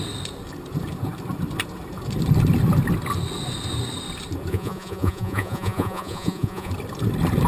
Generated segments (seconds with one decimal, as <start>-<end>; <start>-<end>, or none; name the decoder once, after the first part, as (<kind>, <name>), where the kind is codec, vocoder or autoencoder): 4.5-6.7 (vocoder, Vocos)